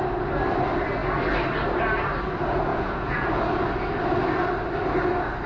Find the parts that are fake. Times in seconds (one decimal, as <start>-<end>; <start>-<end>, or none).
2.7-3.4